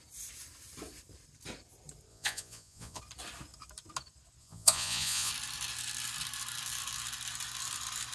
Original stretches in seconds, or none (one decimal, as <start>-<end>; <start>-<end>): 0.0-2.1; 3.0-4.4; 5.3-8.1